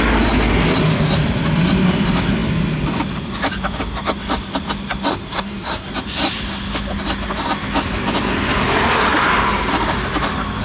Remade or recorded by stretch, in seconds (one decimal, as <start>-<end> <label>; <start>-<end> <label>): 0.0-5.1 recorded; 5.1-5.9 remade; 5.9-10.6 recorded